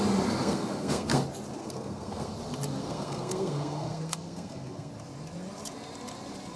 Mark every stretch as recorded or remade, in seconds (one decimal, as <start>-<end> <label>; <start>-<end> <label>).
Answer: 0.0-0.4 recorded; 0.4-1.2 remade; 1.2-1.6 recorded; 1.6-2.3 remade; 2.3-2.8 recorded; 2.8-4.9 remade; 4.9-6.6 recorded